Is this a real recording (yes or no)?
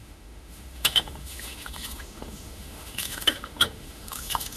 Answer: no